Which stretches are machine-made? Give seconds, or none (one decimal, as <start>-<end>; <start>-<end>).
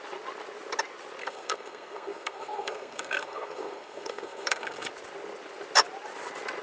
1.2-4.9